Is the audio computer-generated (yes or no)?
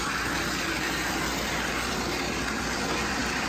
no